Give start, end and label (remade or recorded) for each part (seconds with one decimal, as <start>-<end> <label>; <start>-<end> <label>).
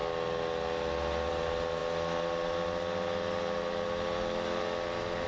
0.0-5.3 recorded